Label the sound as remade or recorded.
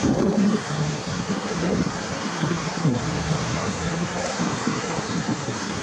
remade